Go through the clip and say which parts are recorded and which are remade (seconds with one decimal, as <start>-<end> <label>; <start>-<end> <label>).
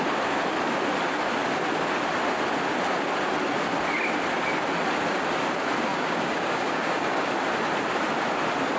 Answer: 0.0-5.9 recorded; 5.9-7.3 remade; 7.3-8.8 recorded